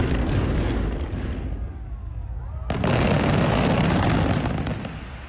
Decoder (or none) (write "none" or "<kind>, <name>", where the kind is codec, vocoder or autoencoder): none